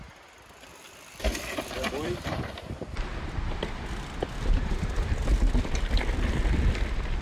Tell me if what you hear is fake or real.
fake